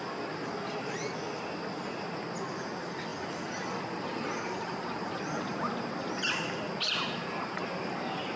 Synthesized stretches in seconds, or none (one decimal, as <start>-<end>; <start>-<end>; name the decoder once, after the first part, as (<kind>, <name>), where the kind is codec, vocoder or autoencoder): none